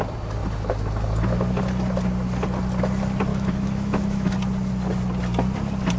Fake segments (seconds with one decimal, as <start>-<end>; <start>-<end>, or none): 3.3-4.3